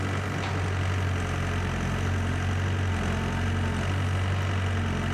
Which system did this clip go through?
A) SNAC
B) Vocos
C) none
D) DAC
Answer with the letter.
C